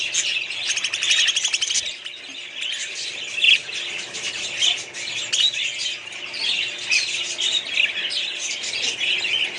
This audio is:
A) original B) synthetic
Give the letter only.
A